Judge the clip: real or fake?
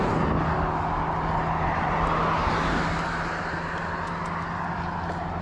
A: real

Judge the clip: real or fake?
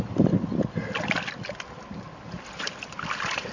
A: real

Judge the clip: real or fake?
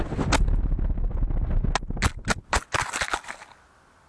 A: real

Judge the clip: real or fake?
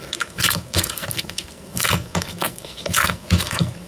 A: fake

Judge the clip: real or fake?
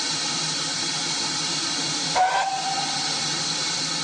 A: real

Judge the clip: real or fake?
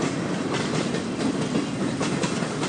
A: real